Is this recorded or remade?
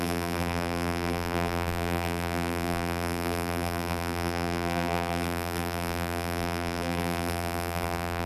remade